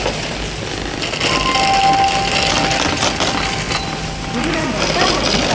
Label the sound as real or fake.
real